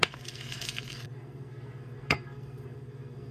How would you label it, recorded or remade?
remade